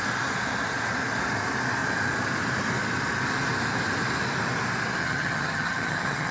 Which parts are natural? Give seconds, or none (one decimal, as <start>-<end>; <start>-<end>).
0.0-5.0